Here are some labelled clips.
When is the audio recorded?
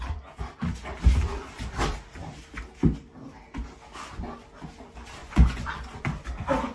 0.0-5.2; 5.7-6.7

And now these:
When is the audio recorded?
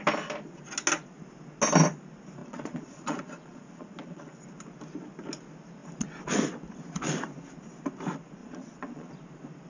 0.0-2.4; 4.4-8.4; 9.1-9.7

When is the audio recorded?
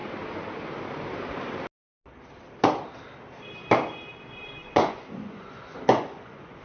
0.0-4.6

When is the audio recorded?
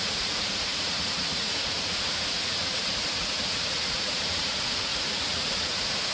none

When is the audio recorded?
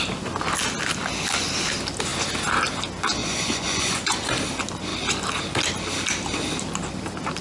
0.0-3.2; 4.3-7.4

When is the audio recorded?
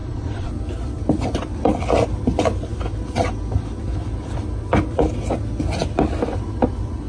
0.5-7.1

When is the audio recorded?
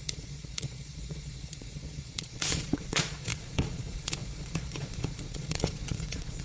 none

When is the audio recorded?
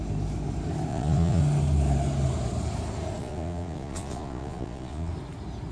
0.0-0.9; 1.4-3.2; 5.1-5.7